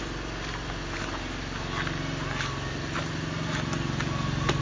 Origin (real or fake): real